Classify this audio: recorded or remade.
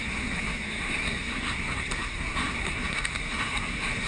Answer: remade